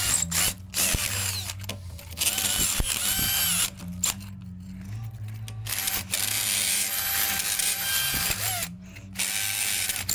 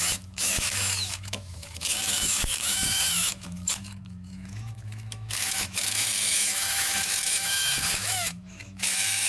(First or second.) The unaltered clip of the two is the first